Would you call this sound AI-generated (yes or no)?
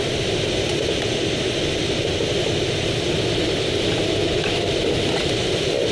no